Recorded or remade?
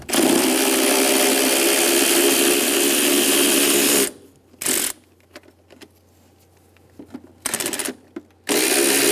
recorded